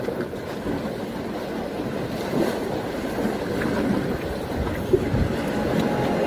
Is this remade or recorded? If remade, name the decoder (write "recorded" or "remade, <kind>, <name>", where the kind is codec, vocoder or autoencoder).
recorded